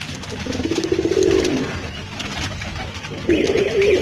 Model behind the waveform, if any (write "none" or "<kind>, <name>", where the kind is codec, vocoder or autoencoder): none